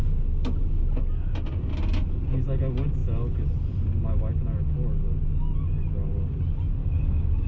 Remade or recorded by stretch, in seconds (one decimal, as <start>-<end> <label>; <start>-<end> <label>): 0.0-6.8 recorded; 6.8-7.5 remade